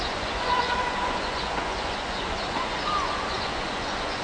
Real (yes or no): no